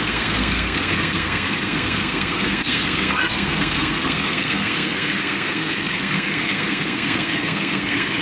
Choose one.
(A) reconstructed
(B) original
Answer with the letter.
A